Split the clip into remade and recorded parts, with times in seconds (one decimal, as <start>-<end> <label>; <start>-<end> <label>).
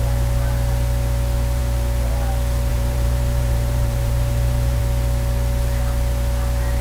0.0-2.7 recorded; 2.7-4.8 remade; 4.8-6.8 recorded